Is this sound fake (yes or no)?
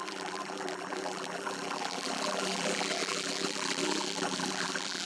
yes